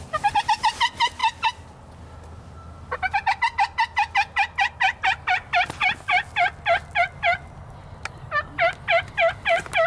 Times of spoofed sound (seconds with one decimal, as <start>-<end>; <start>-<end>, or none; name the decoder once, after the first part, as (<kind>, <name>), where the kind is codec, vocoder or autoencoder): none